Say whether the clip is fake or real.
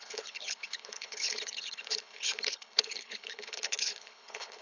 fake